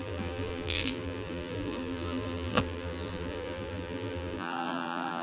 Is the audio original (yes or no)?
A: no